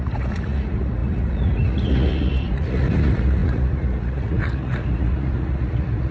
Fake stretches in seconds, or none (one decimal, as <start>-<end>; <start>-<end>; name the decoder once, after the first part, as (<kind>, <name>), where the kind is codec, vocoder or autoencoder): 0.0-6.1 (vocoder, Vocos)